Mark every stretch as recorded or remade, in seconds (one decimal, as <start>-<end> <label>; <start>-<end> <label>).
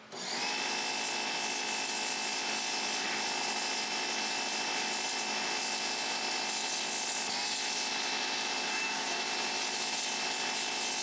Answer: 0.0-8.7 recorded; 8.7-9.2 remade; 9.2-11.0 recorded